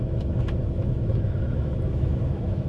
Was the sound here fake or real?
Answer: fake